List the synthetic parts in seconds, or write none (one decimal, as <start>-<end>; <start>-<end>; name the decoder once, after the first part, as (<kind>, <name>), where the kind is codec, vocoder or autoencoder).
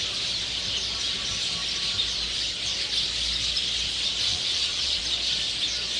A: 4.3-5.0 (vocoder, Vocos)